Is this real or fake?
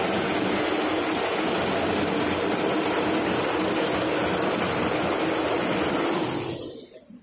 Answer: real